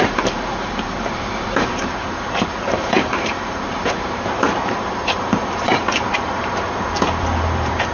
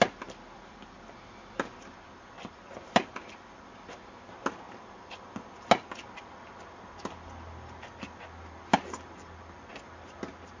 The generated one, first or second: first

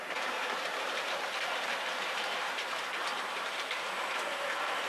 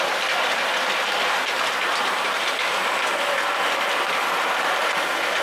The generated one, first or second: first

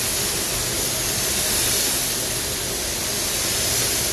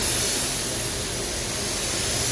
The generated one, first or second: first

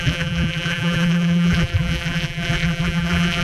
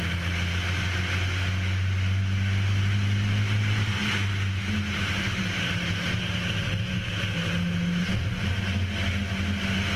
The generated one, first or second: first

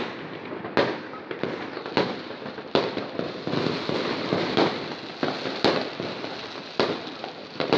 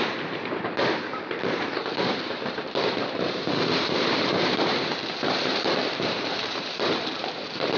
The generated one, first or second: second